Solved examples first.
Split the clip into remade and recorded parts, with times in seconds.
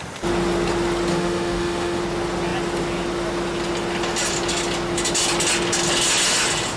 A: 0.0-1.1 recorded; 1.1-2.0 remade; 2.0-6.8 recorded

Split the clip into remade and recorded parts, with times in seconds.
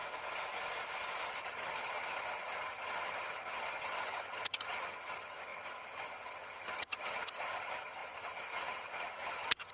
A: 0.0-1.4 recorded; 1.4-9.7 remade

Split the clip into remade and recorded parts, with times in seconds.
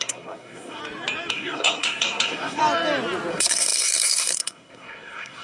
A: 0.0-0.8 remade; 0.8-1.3 recorded; 1.3-2.6 remade; 2.6-3.3 recorded; 3.3-5.4 remade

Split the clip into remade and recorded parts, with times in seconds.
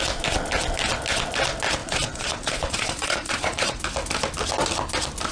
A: 0.0-1.8 recorded; 1.8-3.8 remade; 3.8-5.3 recorded